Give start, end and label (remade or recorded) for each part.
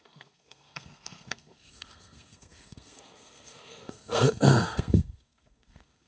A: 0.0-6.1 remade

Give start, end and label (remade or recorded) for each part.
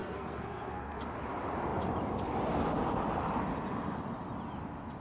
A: 0.0-1.0 remade; 1.0-5.0 recorded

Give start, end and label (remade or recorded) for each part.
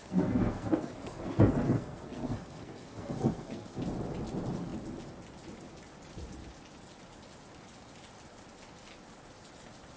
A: 0.0-3.8 remade; 3.8-10.0 recorded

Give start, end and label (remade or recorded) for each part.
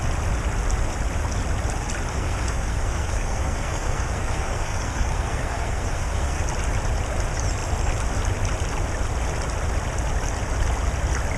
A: 0.0-2.1 recorded; 2.1-6.4 remade; 6.4-11.4 recorded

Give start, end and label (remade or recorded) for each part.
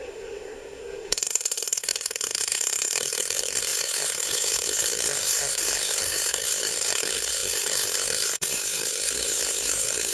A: 0.0-10.1 remade